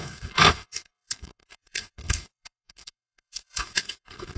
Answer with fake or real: fake